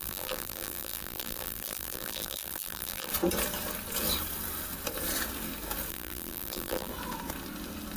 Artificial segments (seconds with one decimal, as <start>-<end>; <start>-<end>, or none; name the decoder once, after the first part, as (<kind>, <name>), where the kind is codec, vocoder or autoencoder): 0.0-3.1 (vocoder, BigVGAN v2); 5.9-6.9